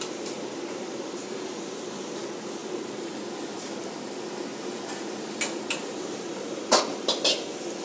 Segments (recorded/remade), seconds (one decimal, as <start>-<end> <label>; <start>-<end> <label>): 0.0-7.8 recorded